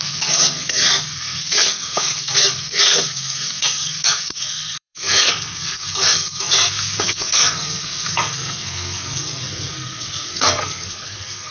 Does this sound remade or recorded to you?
remade